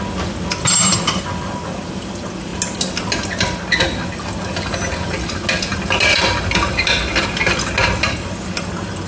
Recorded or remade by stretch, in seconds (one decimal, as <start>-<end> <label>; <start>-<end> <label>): 0.0-9.1 recorded